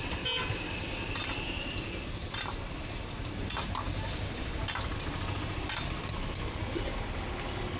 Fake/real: real